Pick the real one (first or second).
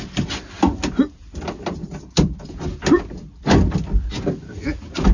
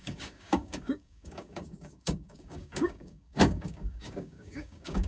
first